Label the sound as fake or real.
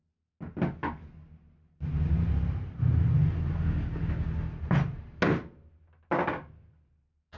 real